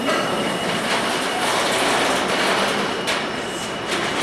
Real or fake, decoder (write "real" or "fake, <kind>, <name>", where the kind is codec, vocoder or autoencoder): real